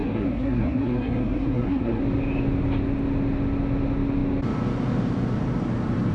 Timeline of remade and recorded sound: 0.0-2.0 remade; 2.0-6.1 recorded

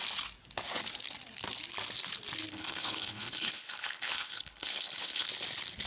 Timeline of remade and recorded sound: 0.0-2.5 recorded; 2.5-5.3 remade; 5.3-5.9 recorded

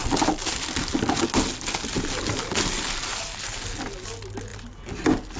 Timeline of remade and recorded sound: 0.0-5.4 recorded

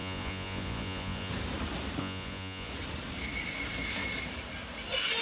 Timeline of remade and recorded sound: 0.0-1.3 remade; 1.3-2.0 recorded; 2.0-2.7 remade; 2.7-5.2 recorded